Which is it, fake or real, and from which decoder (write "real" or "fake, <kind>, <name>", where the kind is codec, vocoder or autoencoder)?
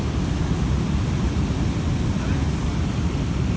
real